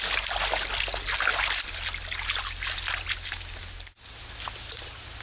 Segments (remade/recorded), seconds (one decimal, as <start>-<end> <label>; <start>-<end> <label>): 0.0-5.2 recorded